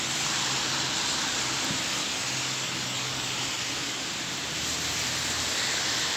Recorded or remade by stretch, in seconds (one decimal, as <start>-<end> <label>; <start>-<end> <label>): 0.0-2.0 recorded; 2.0-4.0 remade; 4.0-6.2 recorded